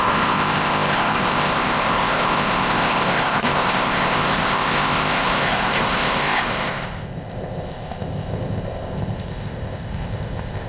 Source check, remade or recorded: remade